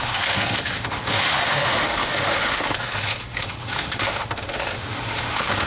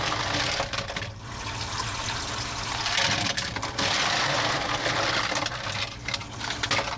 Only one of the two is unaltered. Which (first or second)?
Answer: second